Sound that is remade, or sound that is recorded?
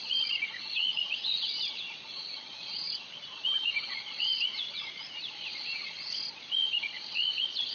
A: remade